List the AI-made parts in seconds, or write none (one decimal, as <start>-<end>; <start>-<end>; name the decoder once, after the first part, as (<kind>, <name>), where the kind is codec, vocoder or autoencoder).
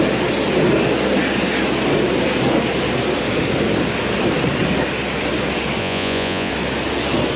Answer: 5.8-6.5 (vocoder, Vocos)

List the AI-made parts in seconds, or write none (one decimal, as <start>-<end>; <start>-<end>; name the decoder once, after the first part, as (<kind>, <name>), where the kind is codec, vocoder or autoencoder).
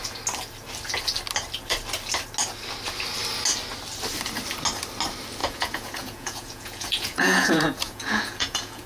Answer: 5.4-8.9 (vocoder, Vocos)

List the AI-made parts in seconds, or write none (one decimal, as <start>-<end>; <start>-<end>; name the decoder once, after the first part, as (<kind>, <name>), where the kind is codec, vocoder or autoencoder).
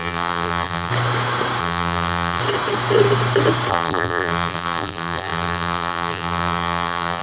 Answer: 0.0-0.9 (vocoder, BigVGAN v2); 1.6-2.4; 3.7-7.2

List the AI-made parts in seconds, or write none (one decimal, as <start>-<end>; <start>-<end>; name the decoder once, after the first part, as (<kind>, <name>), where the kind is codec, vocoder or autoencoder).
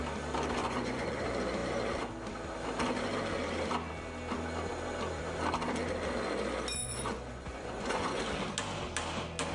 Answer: 0.6-1.2 (vocoder, Vocos); 6.8-8.2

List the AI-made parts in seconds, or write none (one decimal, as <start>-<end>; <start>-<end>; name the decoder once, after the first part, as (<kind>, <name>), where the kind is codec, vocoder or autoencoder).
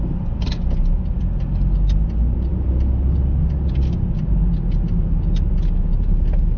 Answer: none